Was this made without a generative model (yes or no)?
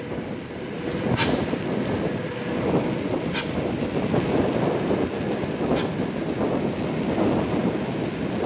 yes